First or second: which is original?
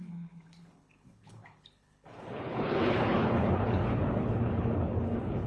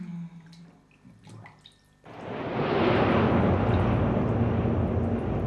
second